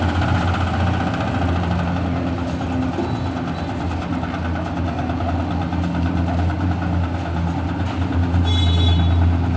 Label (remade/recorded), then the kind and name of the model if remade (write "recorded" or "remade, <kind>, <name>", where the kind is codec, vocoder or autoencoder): recorded